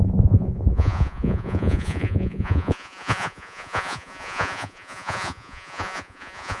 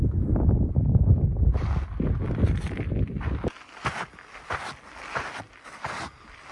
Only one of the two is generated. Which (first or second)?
first